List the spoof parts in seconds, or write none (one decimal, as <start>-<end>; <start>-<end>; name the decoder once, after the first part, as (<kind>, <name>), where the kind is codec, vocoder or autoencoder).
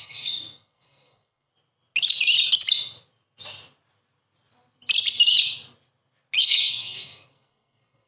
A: 0.0-1.5 (codec, SNAC); 6.4-8.1